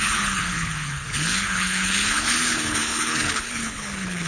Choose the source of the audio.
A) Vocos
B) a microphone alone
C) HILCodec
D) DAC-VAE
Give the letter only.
C